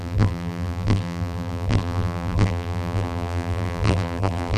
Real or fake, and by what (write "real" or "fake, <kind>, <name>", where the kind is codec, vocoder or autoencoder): fake, vocoder, BigVGAN v2